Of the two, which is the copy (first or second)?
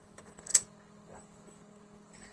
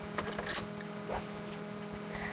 first